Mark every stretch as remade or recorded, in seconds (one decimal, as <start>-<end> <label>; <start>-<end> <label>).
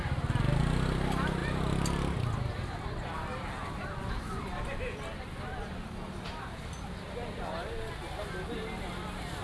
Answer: 0.0-9.4 recorded